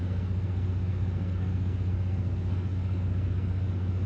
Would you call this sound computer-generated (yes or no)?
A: yes